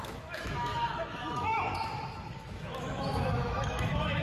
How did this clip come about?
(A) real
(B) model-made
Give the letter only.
B